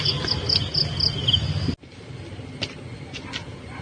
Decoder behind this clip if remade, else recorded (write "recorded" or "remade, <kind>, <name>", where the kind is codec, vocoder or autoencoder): recorded